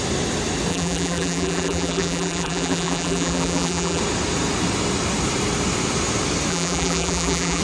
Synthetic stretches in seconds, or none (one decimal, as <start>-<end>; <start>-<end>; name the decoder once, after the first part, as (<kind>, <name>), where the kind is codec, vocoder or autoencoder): 0.7-4.0 (vocoder, BigVGAN v2); 6.5-7.6